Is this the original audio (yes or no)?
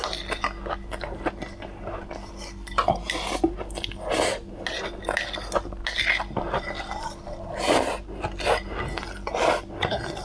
yes